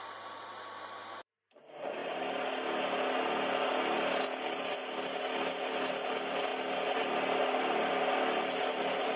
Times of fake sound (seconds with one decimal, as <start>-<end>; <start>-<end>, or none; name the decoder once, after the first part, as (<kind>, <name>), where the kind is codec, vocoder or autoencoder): none